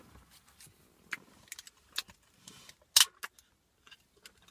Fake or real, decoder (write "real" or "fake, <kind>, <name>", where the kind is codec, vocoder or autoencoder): real